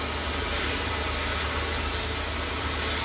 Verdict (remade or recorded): recorded